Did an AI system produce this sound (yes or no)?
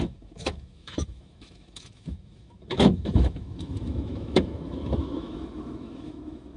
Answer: yes